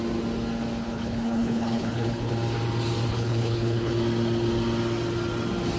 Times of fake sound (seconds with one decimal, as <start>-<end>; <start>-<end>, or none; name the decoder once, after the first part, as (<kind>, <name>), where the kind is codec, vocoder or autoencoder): 0.8-2.3 (codec, HILCodec); 3.1-3.9